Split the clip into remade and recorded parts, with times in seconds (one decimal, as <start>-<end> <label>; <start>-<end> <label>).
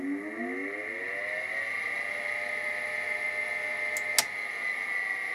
0.0-5.3 recorded